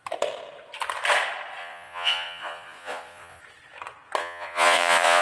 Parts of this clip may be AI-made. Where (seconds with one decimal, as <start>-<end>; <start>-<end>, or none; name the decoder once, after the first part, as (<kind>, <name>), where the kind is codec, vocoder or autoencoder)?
1.6-3.4 (vocoder, Vocos); 4.2-5.2